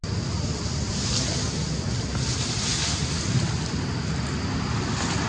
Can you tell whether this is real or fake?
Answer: real